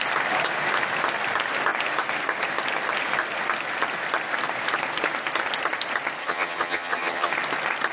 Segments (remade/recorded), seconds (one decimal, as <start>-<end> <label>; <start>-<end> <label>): 0.0-6.2 recorded; 6.2-7.3 remade; 7.3-7.9 recorded